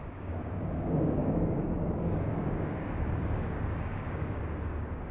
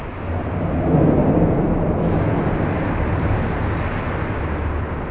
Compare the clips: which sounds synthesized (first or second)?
first